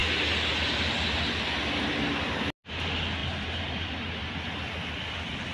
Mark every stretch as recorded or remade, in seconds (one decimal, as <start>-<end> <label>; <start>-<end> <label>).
0.0-3.2 recorded; 3.2-4.2 remade; 4.2-5.5 recorded